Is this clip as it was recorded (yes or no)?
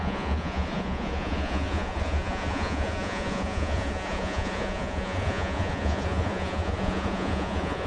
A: no